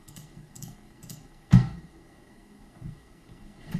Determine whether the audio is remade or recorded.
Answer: remade